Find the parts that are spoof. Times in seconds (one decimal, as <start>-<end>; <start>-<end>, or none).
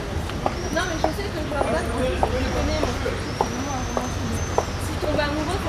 none